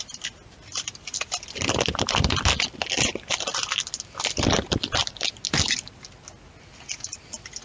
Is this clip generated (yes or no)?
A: no